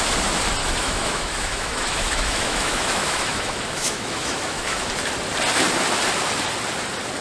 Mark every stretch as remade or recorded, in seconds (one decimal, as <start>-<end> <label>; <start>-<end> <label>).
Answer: 0.0-0.6 recorded; 0.6-4.9 remade; 4.9-7.2 recorded